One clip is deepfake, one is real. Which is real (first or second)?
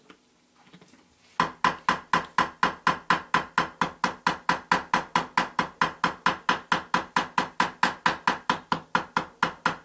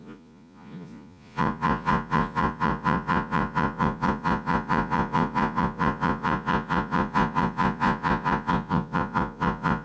first